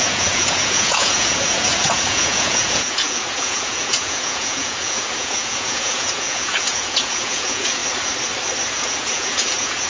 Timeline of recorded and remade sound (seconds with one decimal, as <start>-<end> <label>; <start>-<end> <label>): 0.0-7.8 remade; 7.8-8.7 recorded; 8.7-9.9 remade